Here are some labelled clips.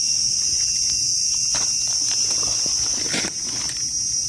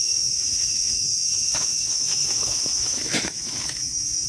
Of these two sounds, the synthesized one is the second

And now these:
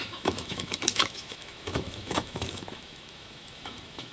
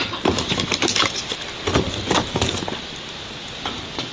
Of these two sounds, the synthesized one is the first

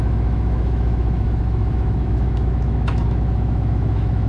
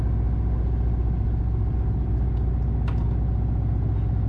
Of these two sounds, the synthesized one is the first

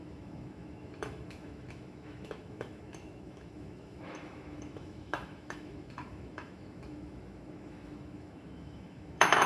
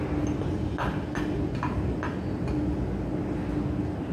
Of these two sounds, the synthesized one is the first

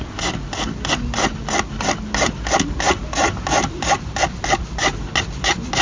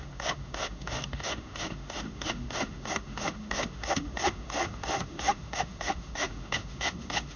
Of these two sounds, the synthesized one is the second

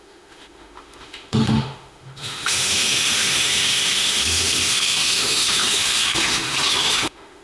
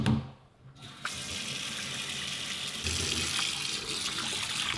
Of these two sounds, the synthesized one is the first